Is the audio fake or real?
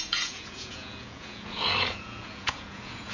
fake